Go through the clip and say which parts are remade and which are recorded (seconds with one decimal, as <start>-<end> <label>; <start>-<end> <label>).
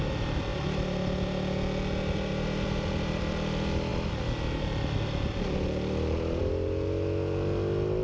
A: 0.0-8.0 recorded